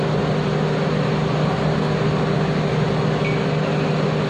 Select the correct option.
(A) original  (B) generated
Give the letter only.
A